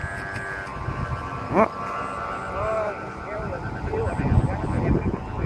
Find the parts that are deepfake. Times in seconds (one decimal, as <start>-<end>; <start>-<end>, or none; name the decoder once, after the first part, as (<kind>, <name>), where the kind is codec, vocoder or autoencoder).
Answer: 0.7-4.0 (vocoder, BigVGAN v2)